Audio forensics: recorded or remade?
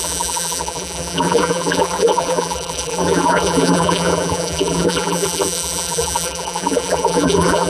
remade